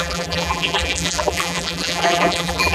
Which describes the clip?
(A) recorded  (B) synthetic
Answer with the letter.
B